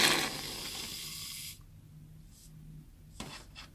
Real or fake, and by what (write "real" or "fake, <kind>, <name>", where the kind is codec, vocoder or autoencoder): real